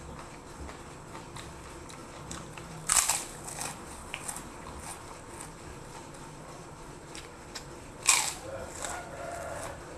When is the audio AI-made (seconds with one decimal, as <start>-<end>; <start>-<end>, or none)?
0.0-10.0